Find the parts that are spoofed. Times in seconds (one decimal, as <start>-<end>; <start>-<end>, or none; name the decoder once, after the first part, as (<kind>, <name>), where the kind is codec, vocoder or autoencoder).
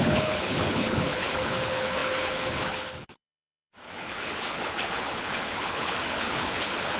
0.0-7.0 (codec, HILCodec)